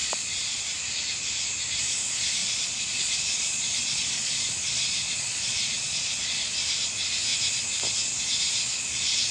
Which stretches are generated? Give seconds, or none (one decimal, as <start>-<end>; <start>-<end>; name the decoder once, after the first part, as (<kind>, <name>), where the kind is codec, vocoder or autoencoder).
0.0-0.8 (vocoder, Vocos); 2.4-6.5